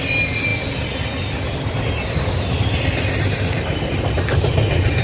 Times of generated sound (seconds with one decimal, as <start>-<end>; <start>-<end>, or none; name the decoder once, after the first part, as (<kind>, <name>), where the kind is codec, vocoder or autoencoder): none